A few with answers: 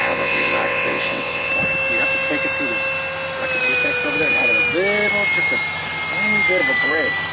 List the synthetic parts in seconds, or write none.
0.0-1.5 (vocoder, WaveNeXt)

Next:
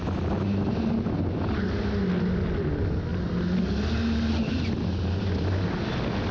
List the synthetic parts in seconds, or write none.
none

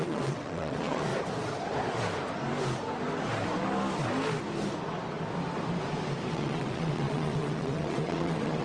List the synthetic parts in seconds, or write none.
0.0-1.1 (vocoder, WaveNeXt); 6.3-8.6

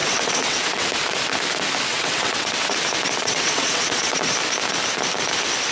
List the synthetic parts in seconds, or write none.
0.0-0.9 (vocoder, WaveNeXt); 1.9-2.8; 3.2-4.2

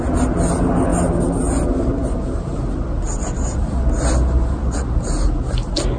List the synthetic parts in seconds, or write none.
none

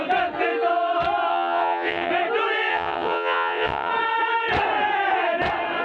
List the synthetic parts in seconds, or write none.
1.3-2.1 (vocoder, WaveNeXt); 2.7-3.9

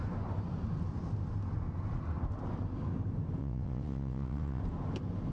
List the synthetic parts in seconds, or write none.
3.4-4.6 (vocoder, WaveNeXt)

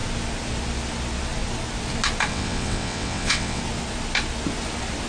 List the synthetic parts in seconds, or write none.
2.3-3.6 (vocoder, WaveNeXt)